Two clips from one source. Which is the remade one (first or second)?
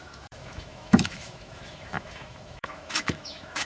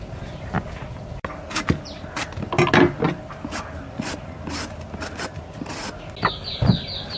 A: first